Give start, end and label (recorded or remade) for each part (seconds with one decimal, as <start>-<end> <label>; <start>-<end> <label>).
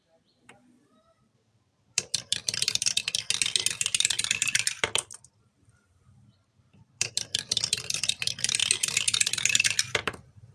0.0-3.1 remade; 3.1-4.4 recorded; 4.4-8.6 remade; 8.6-9.5 recorded; 9.5-10.5 remade